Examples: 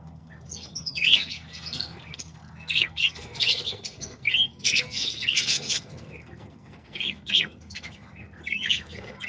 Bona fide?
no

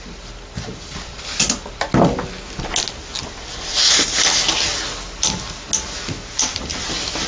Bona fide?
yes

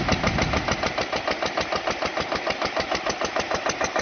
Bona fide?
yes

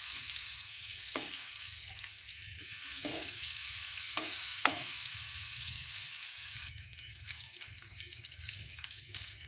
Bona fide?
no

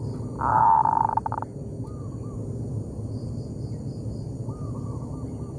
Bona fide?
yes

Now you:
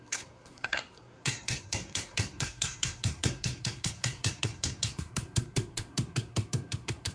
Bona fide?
no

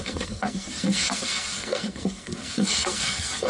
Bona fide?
no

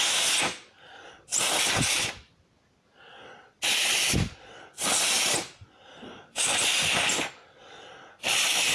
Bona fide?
yes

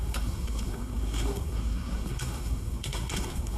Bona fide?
no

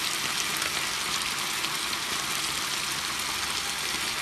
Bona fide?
yes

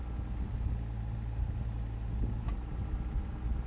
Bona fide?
yes